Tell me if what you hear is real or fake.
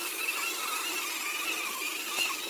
real